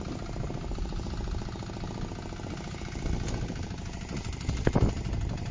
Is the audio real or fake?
real